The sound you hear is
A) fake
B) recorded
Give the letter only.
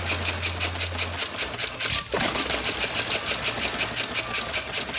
B